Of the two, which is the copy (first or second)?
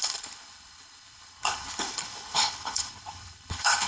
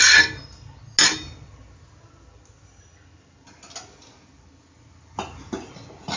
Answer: first